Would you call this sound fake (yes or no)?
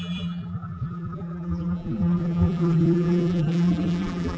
yes